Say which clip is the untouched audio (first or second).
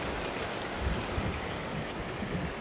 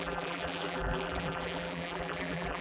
first